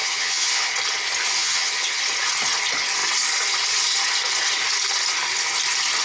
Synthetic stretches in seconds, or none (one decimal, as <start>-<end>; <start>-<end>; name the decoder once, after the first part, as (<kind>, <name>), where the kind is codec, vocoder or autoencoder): 0.0-0.7 (vocoder, HiFi-GAN); 1.4-2.0